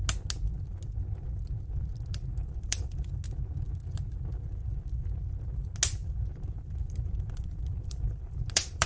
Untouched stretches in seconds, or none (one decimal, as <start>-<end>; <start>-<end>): 0.0-1.9; 3.1-6.0